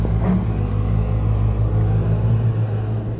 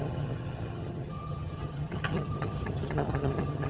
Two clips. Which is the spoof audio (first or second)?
second